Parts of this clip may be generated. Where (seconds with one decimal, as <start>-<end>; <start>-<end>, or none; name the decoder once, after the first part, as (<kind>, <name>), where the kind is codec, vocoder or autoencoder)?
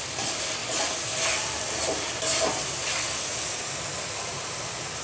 none